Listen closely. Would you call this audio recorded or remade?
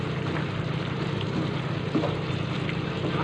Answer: remade